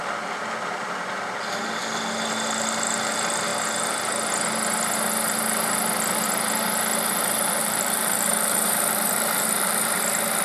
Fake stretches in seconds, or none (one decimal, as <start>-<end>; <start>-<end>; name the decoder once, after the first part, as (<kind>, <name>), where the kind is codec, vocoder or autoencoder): 7.6-10.0 (vocoder, BigVGAN v2)